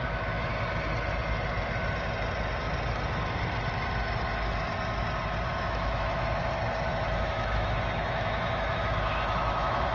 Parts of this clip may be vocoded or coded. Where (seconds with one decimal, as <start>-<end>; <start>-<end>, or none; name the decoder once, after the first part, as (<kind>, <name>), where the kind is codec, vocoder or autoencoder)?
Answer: 0.0-0.5 (autoencoder, DAC-VAE); 5.6-6.4; 6.9-9.9